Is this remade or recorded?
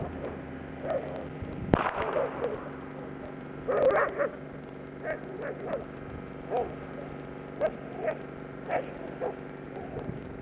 recorded